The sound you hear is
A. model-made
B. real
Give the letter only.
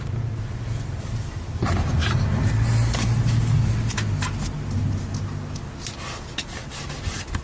B